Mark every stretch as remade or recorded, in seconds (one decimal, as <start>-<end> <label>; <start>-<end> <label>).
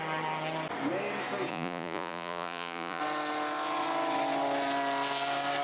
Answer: 0.0-1.5 recorded; 1.5-3.0 remade; 3.0-5.6 recorded